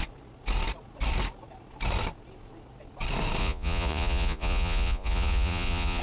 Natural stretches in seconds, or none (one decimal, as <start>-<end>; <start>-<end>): 0.0-3.4